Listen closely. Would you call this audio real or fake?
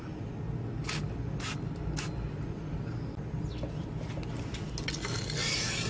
real